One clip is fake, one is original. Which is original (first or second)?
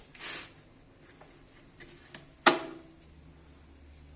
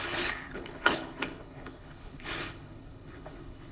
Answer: first